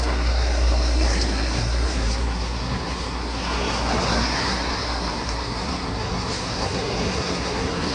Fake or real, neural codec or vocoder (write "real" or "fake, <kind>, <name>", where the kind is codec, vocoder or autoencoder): fake, codec, SNAC